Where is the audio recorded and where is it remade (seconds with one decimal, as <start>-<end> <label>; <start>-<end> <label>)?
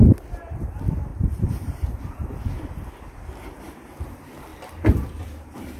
0.0-1.1 recorded; 1.1-2.5 remade; 2.5-5.8 recorded